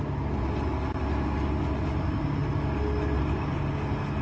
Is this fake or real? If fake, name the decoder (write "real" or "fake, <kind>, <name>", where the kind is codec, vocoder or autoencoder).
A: real